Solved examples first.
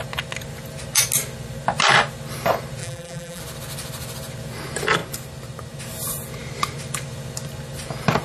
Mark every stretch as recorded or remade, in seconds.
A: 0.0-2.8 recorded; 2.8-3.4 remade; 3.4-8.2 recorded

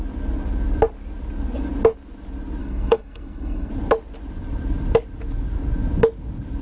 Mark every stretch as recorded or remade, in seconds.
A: 0.0-2.6 recorded; 2.6-3.7 remade; 3.7-6.6 recorded